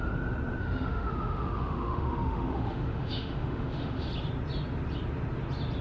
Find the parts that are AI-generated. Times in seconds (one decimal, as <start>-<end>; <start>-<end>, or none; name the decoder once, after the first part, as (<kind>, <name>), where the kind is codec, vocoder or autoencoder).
0.6-4.1 (autoencoder, DAC-VAE)

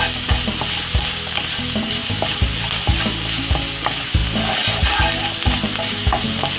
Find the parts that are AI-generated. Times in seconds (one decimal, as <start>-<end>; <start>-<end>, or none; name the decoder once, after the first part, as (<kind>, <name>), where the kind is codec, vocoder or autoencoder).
none